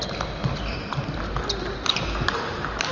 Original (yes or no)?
yes